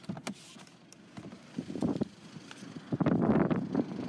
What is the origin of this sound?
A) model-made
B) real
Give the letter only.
B